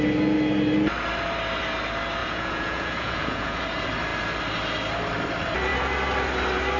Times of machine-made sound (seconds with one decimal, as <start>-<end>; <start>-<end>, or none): 2.2-3.6